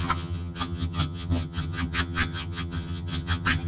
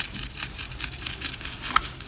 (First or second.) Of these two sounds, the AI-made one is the first